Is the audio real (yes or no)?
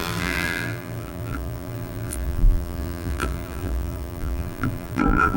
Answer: no